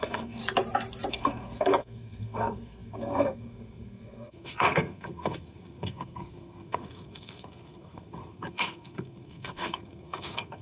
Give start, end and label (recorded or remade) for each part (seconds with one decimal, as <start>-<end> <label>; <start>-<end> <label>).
0.0-0.4 remade; 0.4-1.1 recorded; 1.1-10.6 remade